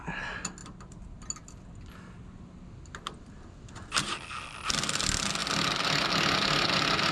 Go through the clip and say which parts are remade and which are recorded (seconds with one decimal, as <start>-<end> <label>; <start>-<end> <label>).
0.0-7.1 recorded